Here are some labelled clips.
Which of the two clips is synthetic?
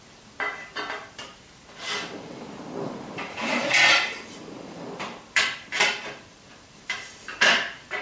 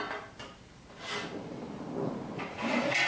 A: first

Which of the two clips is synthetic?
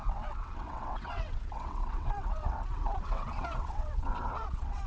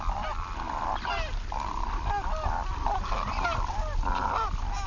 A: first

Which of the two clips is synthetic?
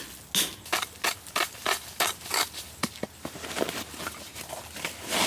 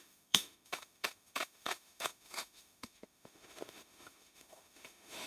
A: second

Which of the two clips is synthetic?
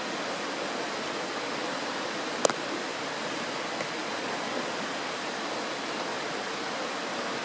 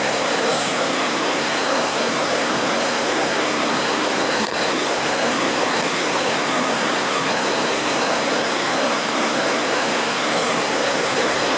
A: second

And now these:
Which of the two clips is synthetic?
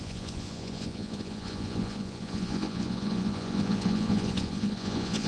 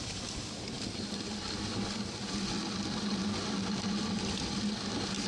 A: first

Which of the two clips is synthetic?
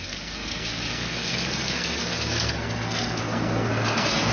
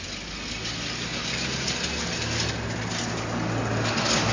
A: first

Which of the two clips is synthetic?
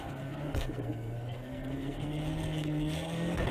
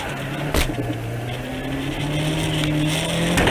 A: first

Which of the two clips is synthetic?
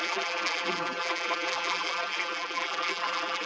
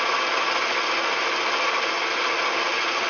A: first